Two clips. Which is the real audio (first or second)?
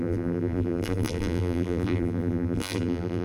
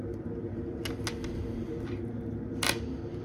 second